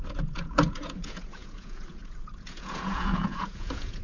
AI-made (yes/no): yes